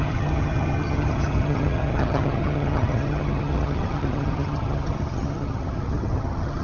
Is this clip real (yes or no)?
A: no